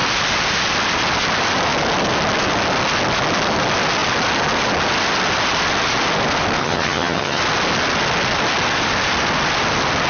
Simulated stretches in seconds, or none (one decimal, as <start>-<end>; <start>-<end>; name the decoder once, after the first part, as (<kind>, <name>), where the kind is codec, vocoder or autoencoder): 6.6-7.4 (vocoder, HiFi-GAN)